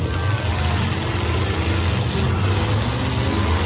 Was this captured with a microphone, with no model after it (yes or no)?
yes